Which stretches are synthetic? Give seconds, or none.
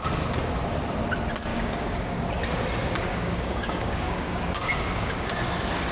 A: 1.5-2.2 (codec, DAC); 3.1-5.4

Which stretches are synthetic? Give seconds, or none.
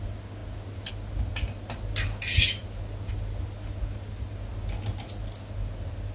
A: none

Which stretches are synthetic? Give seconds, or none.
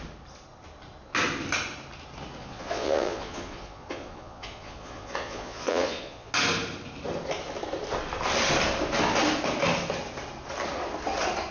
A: 2.4-6.3 (vocoder, Vocos)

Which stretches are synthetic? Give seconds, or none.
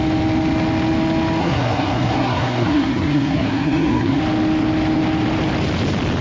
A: 1.4-4.2 (codec, SNAC)